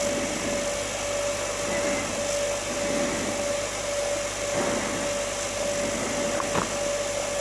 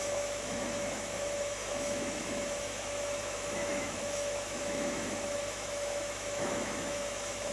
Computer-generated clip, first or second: second